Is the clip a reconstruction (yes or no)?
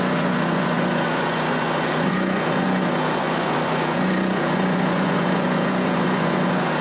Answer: yes